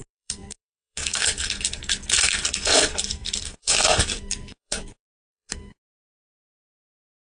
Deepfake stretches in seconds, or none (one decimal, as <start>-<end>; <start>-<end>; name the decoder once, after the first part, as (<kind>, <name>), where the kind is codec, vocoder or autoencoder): 0.0-7.3 (codec, SNAC)